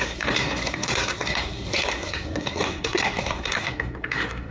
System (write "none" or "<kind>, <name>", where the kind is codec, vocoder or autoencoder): codec, SNAC